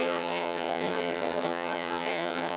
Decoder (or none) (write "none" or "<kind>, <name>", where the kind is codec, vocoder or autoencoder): vocoder, HiFi-GAN